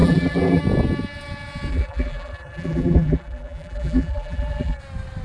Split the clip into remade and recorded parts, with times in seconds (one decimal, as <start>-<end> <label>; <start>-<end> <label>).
0.0-0.6 remade; 0.6-1.7 recorded; 1.7-4.8 remade; 4.8-5.2 recorded